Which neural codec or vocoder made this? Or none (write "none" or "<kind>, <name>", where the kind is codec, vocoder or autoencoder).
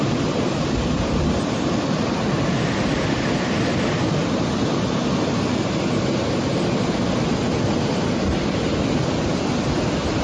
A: none